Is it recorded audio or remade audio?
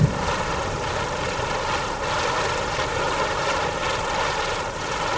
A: recorded